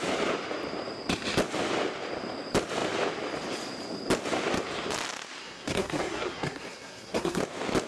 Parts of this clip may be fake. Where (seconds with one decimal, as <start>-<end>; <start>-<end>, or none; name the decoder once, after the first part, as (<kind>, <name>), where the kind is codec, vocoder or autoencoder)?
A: 5.4-7.4 (codec, SNAC)